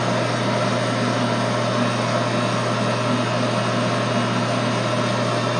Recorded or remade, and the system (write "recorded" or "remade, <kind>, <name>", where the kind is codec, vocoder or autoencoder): recorded